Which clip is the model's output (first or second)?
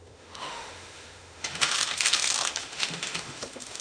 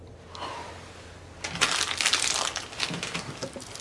first